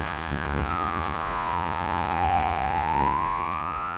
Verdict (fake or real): fake